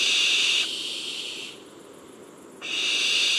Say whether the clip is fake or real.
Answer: real